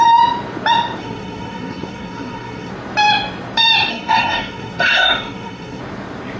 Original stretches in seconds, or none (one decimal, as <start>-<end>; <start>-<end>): 0.0-1.0; 2.7-3.9; 5.8-6.4